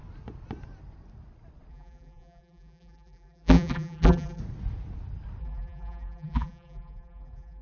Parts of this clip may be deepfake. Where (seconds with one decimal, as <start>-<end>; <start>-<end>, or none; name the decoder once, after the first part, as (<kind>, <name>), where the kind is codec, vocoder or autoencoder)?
1.7-4.4 (vocoder, BigVGAN v2); 5.4-7.6